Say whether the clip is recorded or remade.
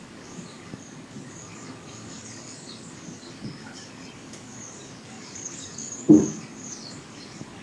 remade